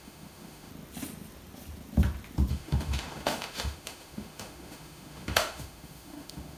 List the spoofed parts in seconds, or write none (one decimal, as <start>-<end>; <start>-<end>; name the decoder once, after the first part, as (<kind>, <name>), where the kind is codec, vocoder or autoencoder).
0.0-0.7 (autoencoder, DAC-VAE); 2.5-6.6